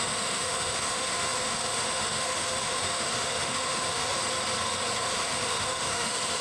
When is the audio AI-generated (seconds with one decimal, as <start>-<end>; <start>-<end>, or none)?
0.0-4.2; 5.1-6.4